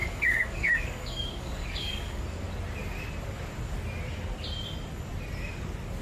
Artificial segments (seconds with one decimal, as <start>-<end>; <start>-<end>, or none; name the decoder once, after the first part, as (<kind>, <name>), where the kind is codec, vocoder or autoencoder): 0.0-2.2 (codec, DAC)